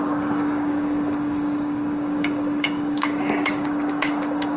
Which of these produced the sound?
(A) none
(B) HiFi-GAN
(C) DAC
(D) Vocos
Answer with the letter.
C